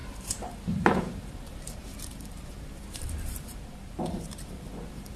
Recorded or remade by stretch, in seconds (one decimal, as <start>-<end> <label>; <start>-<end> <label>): 0.0-5.2 remade